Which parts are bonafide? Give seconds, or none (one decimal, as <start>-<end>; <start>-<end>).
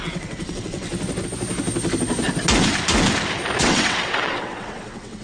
0.9-3.6